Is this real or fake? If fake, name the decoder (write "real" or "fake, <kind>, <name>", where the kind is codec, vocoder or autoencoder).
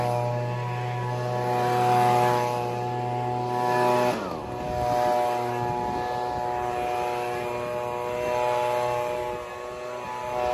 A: real